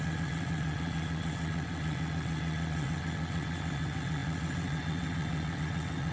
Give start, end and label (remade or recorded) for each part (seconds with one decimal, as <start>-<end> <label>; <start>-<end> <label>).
0.0-6.1 remade